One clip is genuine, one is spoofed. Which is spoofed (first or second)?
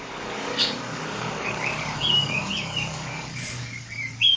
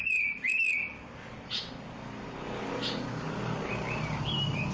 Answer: first